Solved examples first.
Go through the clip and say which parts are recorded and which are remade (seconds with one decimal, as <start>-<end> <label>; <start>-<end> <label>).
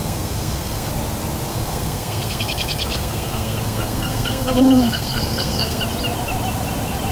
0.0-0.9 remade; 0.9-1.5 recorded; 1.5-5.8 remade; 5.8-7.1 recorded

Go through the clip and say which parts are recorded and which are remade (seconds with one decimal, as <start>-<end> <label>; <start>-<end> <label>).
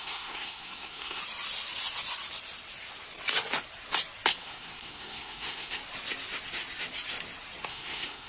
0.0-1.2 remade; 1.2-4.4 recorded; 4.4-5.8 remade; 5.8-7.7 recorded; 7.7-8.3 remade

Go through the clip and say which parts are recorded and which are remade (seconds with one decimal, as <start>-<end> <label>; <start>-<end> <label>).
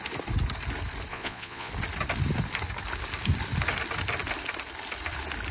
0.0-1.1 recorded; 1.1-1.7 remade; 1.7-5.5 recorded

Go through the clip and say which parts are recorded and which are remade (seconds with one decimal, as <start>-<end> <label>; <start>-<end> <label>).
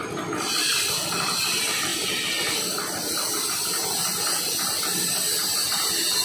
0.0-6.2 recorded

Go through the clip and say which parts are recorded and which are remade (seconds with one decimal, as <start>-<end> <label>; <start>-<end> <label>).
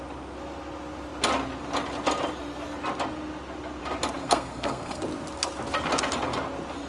0.0-4.2 recorded; 4.2-5.0 remade; 5.0-6.9 recorded